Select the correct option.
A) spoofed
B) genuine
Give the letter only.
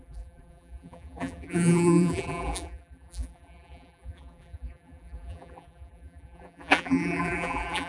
A